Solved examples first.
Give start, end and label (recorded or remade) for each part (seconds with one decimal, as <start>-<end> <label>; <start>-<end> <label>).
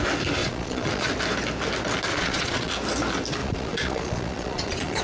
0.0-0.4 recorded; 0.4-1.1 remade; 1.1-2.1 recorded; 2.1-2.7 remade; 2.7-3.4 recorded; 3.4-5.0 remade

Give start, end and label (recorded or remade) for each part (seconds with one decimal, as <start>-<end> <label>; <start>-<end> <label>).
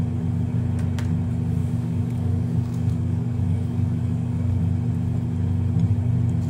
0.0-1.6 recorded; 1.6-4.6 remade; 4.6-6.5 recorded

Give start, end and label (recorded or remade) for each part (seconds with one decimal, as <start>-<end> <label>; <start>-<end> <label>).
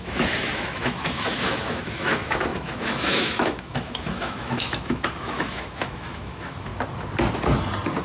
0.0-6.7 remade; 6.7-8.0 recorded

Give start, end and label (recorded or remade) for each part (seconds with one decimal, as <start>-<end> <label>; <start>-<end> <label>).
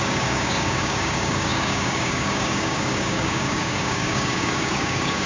0.0-5.3 remade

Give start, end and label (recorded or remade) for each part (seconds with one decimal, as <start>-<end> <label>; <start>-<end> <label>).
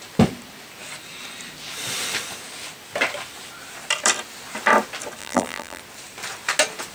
0.0-5.2 recorded; 5.2-5.8 remade; 5.8-6.9 recorded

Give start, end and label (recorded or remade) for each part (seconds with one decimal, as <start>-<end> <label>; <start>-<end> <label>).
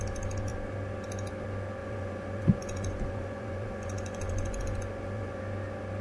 0.0-1.8 recorded; 1.8-5.4 remade; 5.4-6.0 recorded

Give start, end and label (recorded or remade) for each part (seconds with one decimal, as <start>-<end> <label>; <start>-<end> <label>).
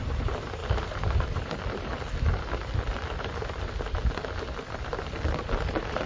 0.0-1.9 remade; 1.9-5.6 recorded; 5.6-6.1 remade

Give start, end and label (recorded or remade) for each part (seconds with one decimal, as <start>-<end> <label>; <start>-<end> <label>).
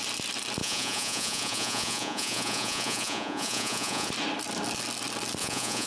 0.0-0.6 recorded; 0.6-4.1 remade; 4.1-5.4 recorded; 5.4-5.9 remade